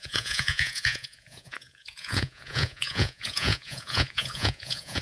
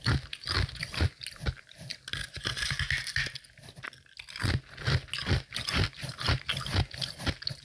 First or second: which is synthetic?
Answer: first